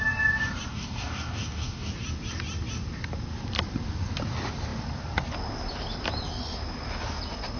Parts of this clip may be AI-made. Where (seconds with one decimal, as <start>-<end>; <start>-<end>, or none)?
0.7-1.9